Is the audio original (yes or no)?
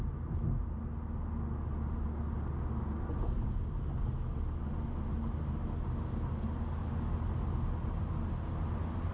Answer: yes